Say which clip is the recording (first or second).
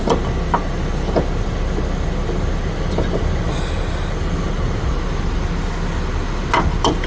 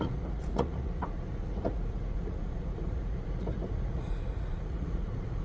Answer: first